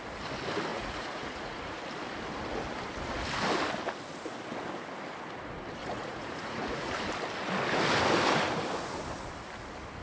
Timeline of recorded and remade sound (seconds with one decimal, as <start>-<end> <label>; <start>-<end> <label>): 0.0-0.7 recorded; 0.7-1.8 remade; 1.8-5.8 recorded; 5.8-6.9 remade; 6.9-10.0 recorded